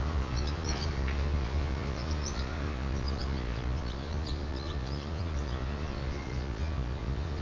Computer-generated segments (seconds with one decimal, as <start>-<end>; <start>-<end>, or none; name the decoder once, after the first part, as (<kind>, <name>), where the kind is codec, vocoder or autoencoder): 0.0-7.4 (vocoder, Vocos)